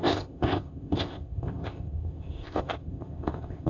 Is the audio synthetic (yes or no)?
yes